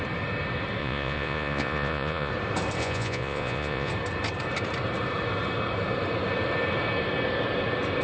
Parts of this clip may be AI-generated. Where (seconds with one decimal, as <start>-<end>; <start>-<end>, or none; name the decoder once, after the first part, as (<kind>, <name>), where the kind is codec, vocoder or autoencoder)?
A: 0.8-2.3 (vocoder, Vocos); 2.8-3.9

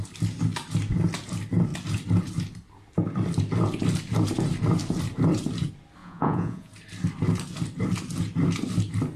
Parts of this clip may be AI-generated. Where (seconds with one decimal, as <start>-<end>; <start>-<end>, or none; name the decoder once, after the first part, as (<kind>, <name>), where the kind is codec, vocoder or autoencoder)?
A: 6.0-6.7 (vocoder, Vocos)

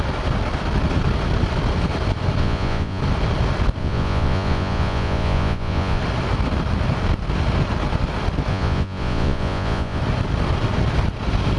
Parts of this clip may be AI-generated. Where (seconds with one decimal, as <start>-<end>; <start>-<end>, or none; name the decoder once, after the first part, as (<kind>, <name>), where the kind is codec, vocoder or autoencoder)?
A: 2.4-3.0 (vocoder, Vocos); 3.8-6.0; 8.5-10.0

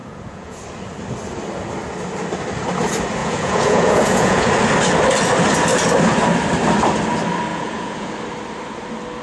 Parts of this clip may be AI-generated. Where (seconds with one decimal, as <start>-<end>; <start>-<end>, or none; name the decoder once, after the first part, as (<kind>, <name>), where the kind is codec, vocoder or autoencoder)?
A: 0.0-0.6 (vocoder, Vocos); 3.2-4.5; 7.5-8.1

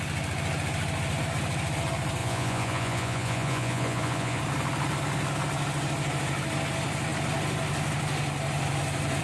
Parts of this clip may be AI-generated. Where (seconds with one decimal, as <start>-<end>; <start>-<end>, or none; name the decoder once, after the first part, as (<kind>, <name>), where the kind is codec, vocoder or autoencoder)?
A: 2.2-4.4 (vocoder, Vocos)

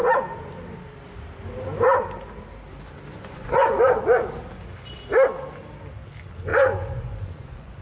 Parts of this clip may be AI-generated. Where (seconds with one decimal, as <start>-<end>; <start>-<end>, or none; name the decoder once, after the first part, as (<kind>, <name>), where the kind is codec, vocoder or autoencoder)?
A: 3.1-4.0 (vocoder, Vocos); 6.5-7.8